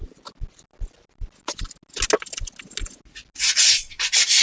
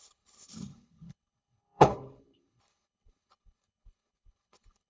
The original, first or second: first